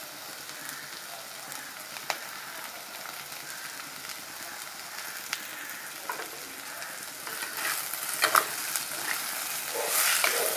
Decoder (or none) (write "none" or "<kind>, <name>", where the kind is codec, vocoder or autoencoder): none